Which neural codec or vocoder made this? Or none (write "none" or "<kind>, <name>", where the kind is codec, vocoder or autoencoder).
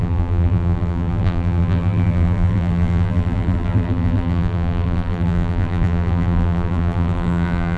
vocoder, BigVGAN v2